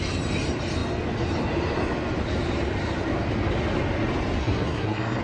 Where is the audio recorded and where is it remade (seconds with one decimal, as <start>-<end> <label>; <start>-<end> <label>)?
0.0-4.4 recorded; 4.4-5.2 remade